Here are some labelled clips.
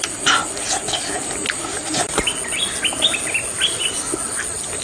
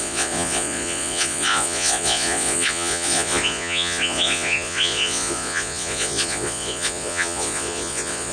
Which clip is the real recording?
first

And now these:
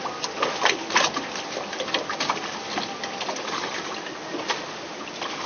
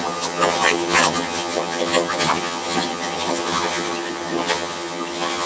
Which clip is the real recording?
first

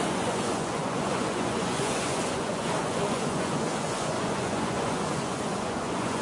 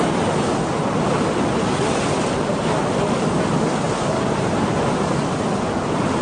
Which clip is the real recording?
second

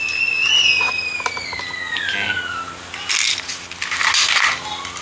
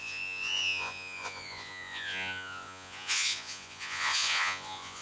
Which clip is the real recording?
first